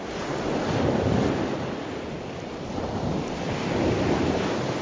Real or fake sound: real